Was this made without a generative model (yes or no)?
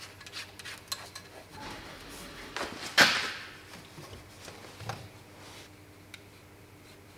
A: yes